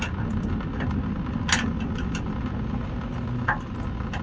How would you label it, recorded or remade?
recorded